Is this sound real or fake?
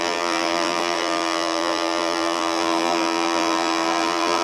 fake